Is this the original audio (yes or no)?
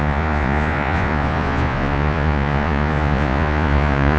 no